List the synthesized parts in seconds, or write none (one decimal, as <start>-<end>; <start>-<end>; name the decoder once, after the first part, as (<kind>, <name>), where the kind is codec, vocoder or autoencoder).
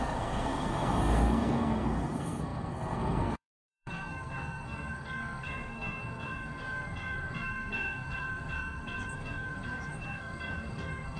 0.0-11.2 (codec, SNAC)